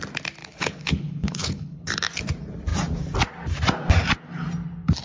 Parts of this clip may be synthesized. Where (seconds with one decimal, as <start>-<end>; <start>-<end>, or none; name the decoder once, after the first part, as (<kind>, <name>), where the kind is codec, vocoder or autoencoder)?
0.4-1.9 (codec, HILCodec)